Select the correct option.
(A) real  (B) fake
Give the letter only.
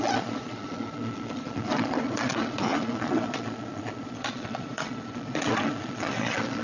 B